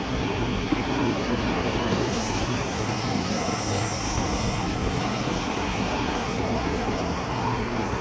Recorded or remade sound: remade